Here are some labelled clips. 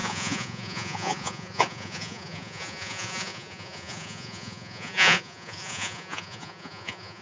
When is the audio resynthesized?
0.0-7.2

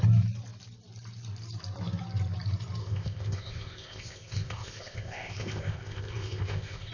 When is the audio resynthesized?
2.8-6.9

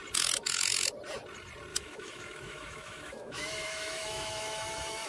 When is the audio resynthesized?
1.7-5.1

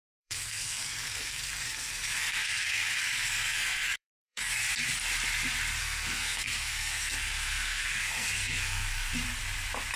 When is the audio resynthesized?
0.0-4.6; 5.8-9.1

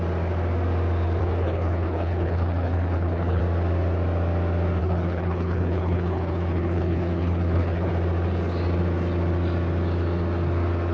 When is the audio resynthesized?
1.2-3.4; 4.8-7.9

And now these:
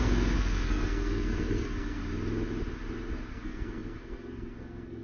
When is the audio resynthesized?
0.0-2.0; 3.3-5.0